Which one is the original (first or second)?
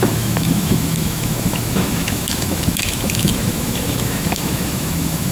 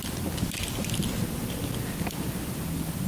second